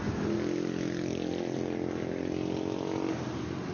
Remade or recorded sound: recorded